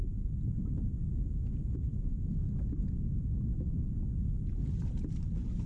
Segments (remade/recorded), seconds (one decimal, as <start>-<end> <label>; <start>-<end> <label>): 0.0-5.7 recorded